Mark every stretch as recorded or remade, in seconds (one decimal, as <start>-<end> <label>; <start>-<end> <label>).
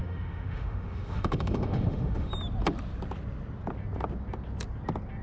0.0-2.3 remade; 2.3-5.2 recorded